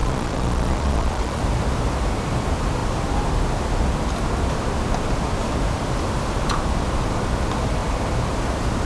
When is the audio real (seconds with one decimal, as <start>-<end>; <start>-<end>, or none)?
1.4-8.8